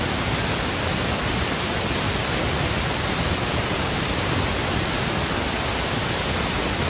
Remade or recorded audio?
recorded